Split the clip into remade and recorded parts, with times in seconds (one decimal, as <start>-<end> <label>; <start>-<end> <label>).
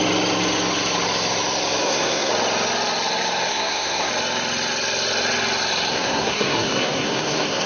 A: 0.0-1.8 recorded; 1.8-2.3 remade; 2.3-3.5 recorded; 3.5-4.1 remade; 4.1-5.9 recorded; 5.9-7.7 remade